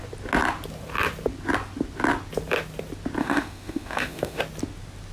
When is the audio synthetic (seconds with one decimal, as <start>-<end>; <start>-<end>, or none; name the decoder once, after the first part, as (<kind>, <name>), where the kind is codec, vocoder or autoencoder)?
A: 3.2-4.4 (autoencoder, DAC-VAE)